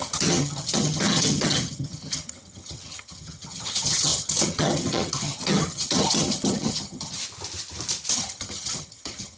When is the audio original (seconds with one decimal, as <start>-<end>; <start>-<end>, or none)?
7.2-8.1

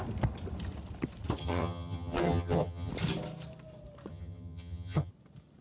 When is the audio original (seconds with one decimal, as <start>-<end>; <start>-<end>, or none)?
0.0-1.4; 2.9-4.1; 5.1-5.6

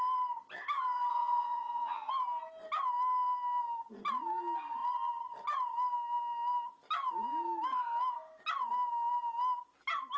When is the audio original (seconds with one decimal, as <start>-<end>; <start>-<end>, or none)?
0.0-1.1; 2.1-10.2

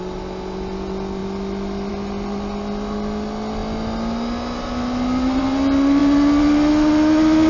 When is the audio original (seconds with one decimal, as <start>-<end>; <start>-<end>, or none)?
0.0-7.5

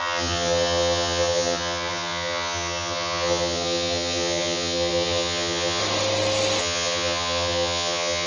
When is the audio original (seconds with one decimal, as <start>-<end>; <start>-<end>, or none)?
5.8-6.6